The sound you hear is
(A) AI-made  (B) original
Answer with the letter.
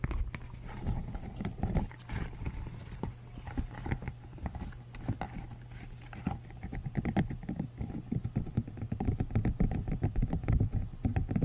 B